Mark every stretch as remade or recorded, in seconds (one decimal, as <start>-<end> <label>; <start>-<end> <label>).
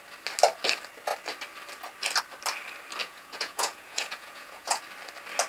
0.0-3.0 recorded; 3.0-4.8 remade; 4.8-5.5 recorded